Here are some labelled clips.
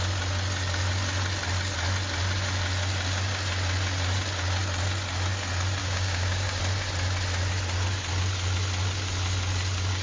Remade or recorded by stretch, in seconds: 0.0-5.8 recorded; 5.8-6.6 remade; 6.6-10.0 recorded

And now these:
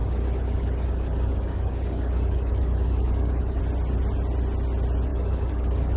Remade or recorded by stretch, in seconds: 0.0-3.6 remade; 3.6-5.1 recorded; 5.1-6.0 remade

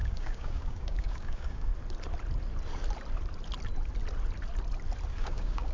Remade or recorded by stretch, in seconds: 0.0-1.7 remade; 1.7-5.1 recorded; 5.1-5.7 remade

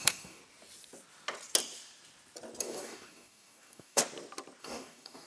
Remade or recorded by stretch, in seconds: 0.0-0.4 remade; 0.4-2.6 recorded; 2.6-4.0 remade; 4.0-4.6 recorded; 4.6-5.3 remade

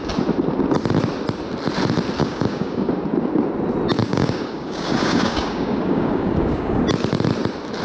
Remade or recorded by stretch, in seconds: 0.0-2.2 recorded; 2.2-2.9 remade; 2.9-4.0 recorded; 4.0-6.8 remade; 6.8-7.8 recorded